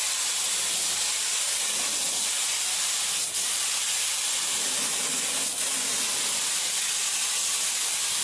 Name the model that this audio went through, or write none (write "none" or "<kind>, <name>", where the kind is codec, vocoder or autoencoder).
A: none